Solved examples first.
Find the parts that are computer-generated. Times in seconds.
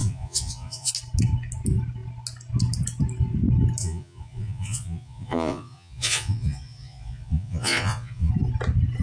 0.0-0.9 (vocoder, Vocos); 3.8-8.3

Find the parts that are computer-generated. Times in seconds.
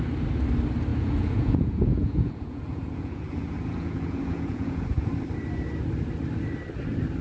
0.9-5.1 (vocoder, Vocos)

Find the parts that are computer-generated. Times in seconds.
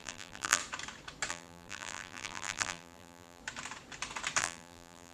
0.0-0.6 (vocoder, BigVGAN v2); 1.3-3.4; 4.4-5.1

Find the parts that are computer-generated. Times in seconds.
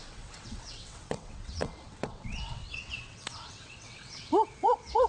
0.0-5.1 (vocoder, WaveNeXt)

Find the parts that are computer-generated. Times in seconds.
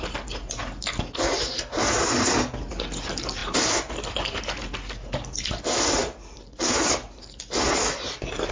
none